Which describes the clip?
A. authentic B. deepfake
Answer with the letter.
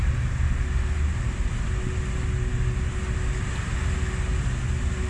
A